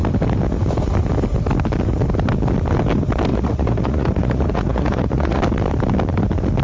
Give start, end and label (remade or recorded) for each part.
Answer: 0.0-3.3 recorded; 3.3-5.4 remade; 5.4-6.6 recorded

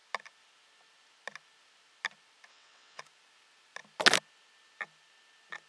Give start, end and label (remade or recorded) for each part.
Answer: 0.0-2.5 recorded; 2.5-3.0 remade; 3.0-5.7 recorded

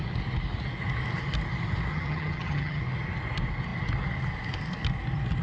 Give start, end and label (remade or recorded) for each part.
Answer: 0.0-1.9 recorded; 1.9-2.8 remade; 2.8-5.4 recorded

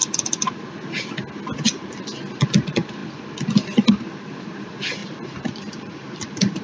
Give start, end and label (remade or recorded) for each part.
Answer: 0.0-5.0 recorded; 5.0-6.6 remade

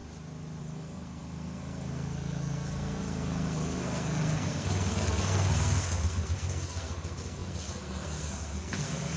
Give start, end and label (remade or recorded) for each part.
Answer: 0.0-0.6 recorded; 0.6-9.2 remade